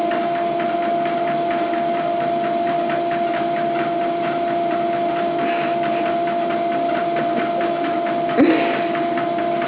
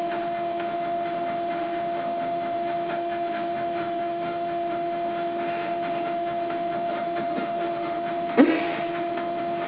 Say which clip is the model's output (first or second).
second